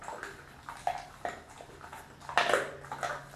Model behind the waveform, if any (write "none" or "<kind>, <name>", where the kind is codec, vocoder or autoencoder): none